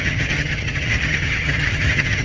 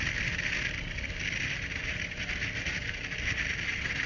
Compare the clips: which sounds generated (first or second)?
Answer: first